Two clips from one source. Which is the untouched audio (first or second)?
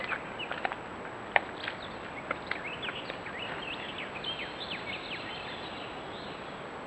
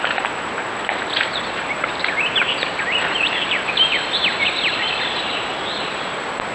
first